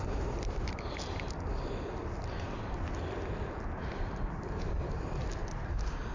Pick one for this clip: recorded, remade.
recorded